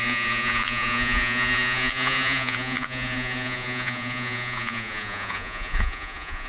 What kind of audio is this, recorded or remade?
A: remade